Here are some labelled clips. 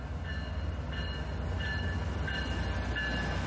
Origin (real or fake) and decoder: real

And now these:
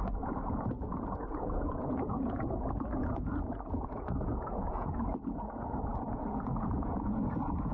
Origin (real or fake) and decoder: fake, vocoder, Vocos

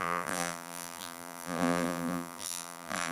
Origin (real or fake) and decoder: fake, vocoder, BigVGAN v2